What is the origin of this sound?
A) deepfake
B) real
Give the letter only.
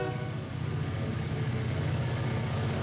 A